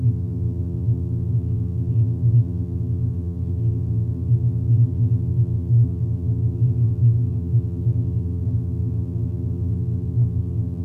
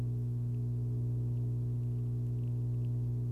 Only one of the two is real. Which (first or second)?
second